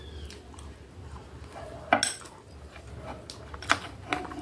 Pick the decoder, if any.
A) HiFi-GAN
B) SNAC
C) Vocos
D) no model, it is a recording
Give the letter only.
D